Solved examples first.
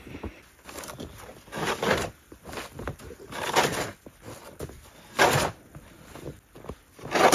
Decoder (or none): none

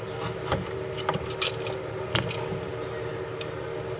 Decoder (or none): none